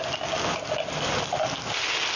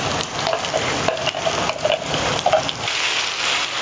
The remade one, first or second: second